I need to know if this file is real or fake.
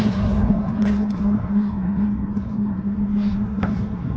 fake